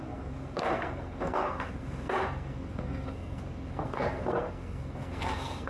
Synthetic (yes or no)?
yes